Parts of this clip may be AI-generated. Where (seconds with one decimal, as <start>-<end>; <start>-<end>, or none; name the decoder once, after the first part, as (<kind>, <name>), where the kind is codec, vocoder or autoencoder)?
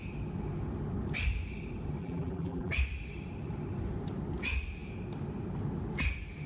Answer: 2.0-2.7 (vocoder, BigVGAN v2)